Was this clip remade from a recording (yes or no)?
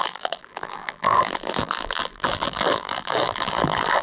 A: yes